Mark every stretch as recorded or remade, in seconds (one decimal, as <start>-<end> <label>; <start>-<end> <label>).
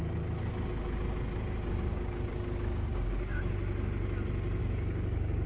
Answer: 0.0-1.9 recorded; 1.9-3.4 remade; 3.4-4.6 recorded; 4.6-5.5 remade